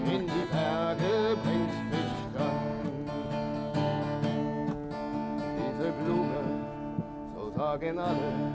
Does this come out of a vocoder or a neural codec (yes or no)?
no